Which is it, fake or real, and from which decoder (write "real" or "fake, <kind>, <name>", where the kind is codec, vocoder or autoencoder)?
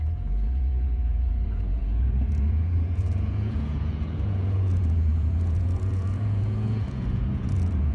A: fake, vocoder, Vocos